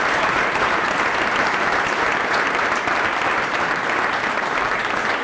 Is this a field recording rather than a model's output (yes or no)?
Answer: no